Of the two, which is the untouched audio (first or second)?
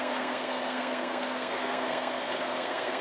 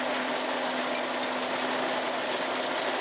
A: second